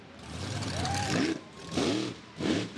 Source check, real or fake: fake